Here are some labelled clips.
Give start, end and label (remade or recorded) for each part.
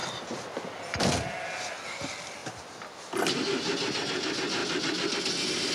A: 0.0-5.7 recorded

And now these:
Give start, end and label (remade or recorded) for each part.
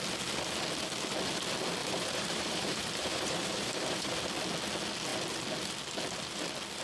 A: 0.0-1.8 recorded; 1.8-4.1 remade; 4.1-6.8 recorded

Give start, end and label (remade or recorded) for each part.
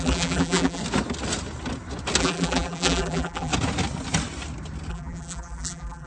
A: 0.0-0.8 remade; 0.8-2.2 recorded; 2.2-3.5 remade; 3.5-4.9 recorded; 4.9-6.1 remade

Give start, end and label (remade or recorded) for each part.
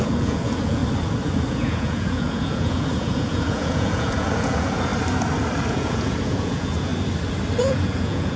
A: 0.0-0.8 remade; 0.8-1.5 recorded; 1.5-4.9 remade; 4.9-5.7 recorded; 5.7-6.9 remade; 6.9-7.6 recorded; 7.6-8.4 remade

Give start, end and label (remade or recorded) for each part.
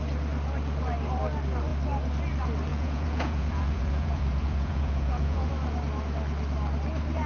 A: 0.0-2.7 recorded; 2.7-5.5 remade; 5.5-7.3 recorded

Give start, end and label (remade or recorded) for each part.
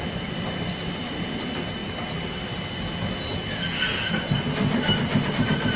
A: 0.0-1.8 remade; 1.8-5.3 recorded; 5.3-5.8 remade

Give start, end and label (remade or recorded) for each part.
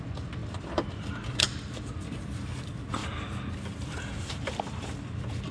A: 0.0-3.0 remade; 3.0-4.3 recorded; 4.3-5.5 remade